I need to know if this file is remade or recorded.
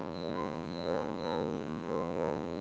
remade